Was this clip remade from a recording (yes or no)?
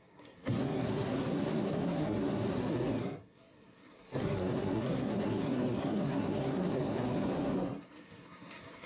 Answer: yes